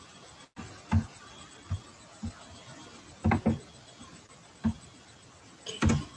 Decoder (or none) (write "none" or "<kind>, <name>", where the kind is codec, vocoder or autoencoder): none